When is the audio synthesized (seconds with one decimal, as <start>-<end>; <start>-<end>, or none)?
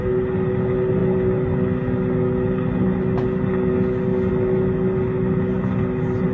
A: none